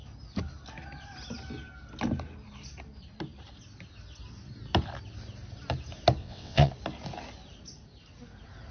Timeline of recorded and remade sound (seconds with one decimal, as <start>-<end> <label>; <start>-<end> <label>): 0.0-6.2 recorded; 6.2-6.7 remade; 6.7-8.7 recorded